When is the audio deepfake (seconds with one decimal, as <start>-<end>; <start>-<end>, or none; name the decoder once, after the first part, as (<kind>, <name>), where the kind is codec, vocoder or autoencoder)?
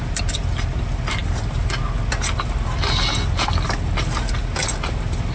none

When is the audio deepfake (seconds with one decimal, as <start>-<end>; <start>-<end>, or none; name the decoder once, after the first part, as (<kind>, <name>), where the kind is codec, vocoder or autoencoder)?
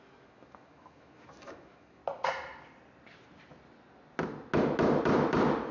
0.0-2.0 (autoencoder, DAC-VAE)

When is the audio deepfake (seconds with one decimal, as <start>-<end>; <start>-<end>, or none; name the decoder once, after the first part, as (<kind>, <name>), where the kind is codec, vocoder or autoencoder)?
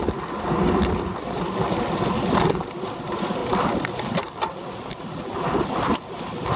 none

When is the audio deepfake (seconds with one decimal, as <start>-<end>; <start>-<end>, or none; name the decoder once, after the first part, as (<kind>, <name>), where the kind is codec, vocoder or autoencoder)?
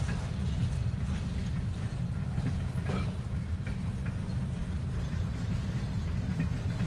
none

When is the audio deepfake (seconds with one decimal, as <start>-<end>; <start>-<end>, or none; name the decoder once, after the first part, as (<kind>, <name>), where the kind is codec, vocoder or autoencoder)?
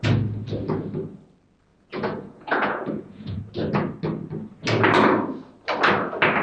1.7-3.4 (vocoder, Vocos)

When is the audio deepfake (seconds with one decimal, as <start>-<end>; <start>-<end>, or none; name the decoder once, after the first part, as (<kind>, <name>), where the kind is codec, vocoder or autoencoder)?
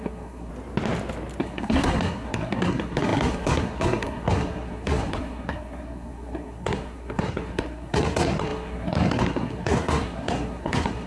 0.0-0.5 (codec, SNAC); 1.4-11.1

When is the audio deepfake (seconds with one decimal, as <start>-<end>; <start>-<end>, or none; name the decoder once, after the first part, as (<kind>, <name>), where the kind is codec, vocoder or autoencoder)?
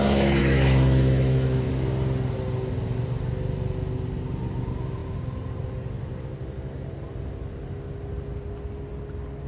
0.4-1.7 (autoencoder, DAC-VAE)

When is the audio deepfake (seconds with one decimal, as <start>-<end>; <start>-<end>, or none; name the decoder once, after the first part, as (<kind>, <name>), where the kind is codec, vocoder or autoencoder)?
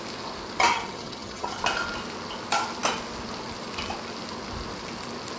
0.7-1.6 (vocoder, HiFi-GAN)